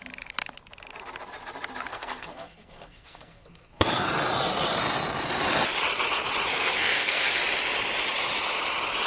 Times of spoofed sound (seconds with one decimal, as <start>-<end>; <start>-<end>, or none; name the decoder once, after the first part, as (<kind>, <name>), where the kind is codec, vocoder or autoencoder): 1.9-4.1 (codec, SNAC); 6.5-7.4